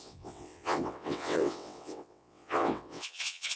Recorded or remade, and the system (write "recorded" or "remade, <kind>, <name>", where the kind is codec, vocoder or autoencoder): remade, vocoder, WaveNeXt